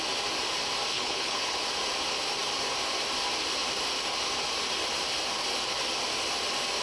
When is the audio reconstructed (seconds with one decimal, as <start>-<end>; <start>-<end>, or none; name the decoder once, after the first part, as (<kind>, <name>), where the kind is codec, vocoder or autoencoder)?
0.9-1.6 (codec, HILCodec)